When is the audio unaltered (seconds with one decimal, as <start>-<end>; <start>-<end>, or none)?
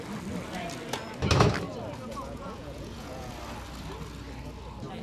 0.0-2.0; 3.3-5.0